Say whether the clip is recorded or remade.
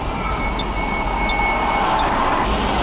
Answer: recorded